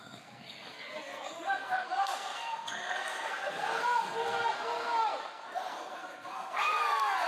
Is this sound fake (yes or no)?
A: yes